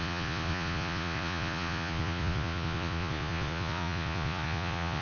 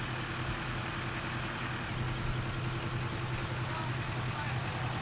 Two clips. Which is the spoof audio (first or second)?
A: first